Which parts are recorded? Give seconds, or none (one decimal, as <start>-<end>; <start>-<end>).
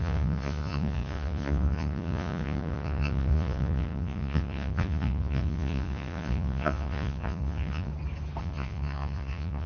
7.9-8.4